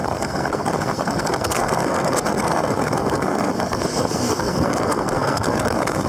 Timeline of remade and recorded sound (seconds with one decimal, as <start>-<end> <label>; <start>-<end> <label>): 0.0-6.1 remade